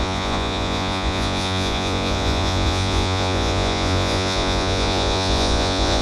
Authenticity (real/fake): fake